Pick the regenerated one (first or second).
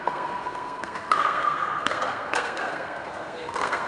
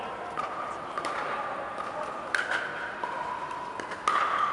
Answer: first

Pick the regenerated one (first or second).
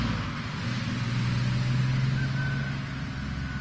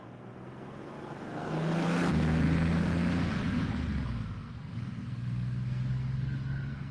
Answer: second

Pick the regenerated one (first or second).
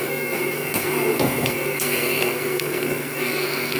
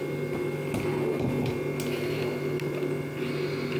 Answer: first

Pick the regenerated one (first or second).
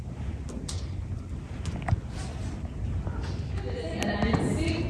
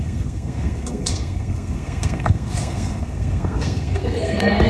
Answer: second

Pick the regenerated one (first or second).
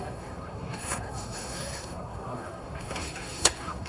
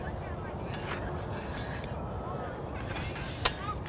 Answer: first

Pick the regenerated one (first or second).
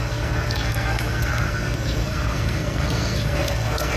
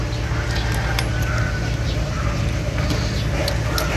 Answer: first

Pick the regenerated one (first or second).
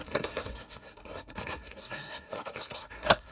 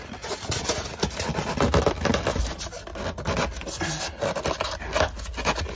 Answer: first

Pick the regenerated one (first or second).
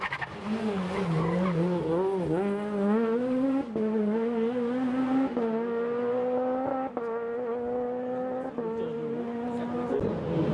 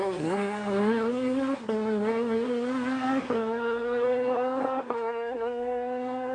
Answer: second